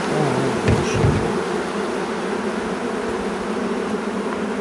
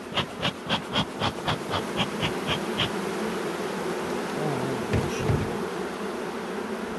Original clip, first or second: first